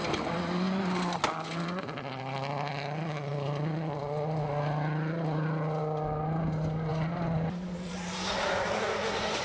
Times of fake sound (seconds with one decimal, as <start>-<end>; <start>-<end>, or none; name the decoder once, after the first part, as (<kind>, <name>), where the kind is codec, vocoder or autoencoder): none